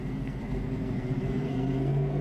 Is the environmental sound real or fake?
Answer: fake